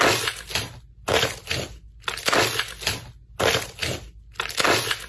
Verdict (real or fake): real